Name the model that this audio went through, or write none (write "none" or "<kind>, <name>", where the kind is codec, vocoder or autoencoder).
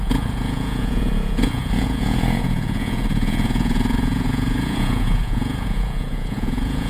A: vocoder, Vocos